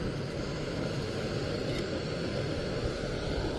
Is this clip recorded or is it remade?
recorded